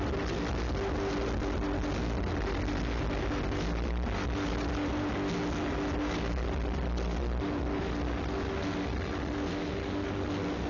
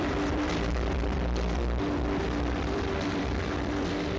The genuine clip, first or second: first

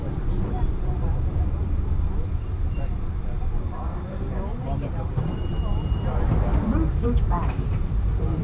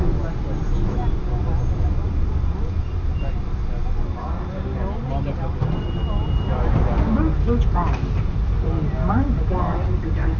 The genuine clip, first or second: second